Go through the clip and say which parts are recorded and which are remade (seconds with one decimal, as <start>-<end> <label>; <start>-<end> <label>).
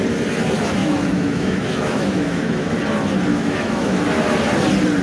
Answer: 0.0-0.8 recorded; 0.8-2.7 remade; 2.7-3.3 recorded; 3.3-4.0 remade; 4.0-5.0 recorded